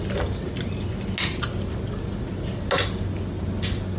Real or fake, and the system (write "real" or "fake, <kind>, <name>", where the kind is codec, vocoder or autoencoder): real